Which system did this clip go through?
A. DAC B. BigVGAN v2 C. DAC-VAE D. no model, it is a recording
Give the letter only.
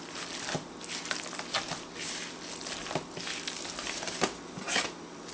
D